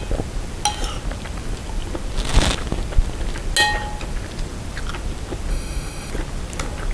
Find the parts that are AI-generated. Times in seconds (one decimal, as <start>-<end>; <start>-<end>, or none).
5.5-6.1